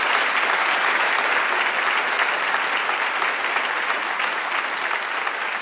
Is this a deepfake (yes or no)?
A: no